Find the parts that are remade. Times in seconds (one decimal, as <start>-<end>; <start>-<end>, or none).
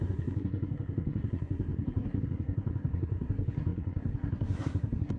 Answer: 0.0-5.2